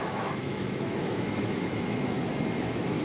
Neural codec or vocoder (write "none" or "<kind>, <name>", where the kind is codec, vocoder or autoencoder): autoencoder, DAC-VAE